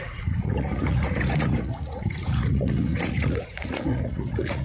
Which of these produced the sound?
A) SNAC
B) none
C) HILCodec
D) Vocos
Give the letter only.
D